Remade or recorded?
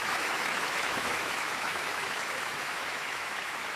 remade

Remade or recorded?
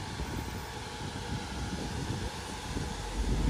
recorded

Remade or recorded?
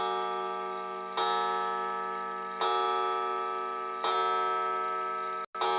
recorded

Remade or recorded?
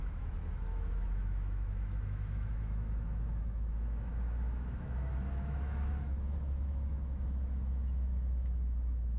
remade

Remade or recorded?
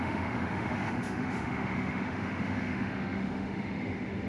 remade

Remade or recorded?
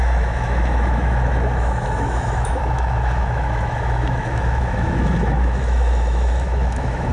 remade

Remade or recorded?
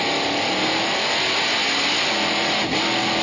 recorded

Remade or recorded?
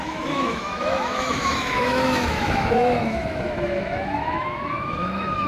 remade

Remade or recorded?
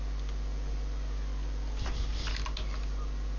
recorded